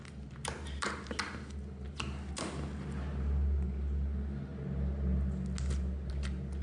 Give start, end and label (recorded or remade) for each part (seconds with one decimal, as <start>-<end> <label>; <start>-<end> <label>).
0.0-6.6 recorded